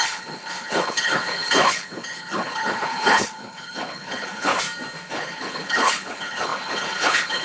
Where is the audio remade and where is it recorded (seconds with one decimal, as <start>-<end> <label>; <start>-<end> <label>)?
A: 0.0-4.5 remade; 4.5-5.1 recorded; 5.1-7.4 remade